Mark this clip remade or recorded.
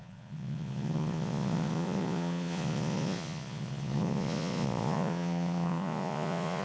remade